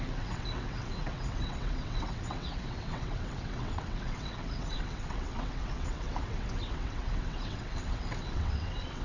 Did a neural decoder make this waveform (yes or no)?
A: yes